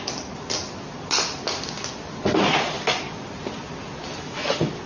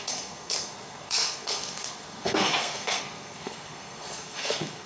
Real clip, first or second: first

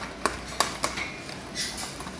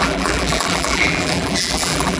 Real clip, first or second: first